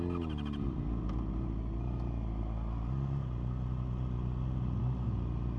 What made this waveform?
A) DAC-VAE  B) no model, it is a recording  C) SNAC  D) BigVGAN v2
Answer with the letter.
B